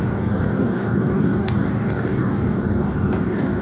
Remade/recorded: remade